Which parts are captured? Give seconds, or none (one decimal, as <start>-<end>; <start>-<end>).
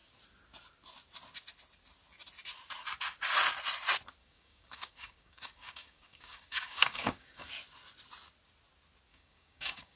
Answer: 0.0-4.2; 7.5-9.1